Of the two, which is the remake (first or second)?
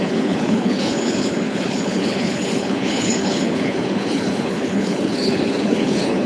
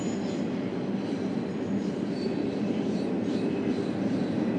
first